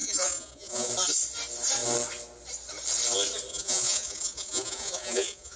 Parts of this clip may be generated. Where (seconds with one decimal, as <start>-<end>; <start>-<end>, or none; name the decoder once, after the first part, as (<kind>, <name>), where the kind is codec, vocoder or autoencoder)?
0.0-0.9 (vocoder, Vocos); 3.5-5.6